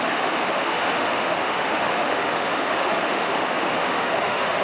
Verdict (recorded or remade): remade